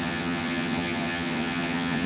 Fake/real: fake